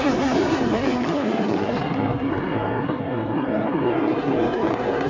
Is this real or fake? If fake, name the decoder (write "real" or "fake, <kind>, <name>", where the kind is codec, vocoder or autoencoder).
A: fake, codec, SNAC